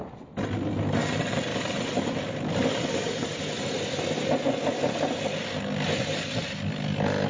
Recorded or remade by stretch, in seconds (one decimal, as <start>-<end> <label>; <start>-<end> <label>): 0.0-7.3 recorded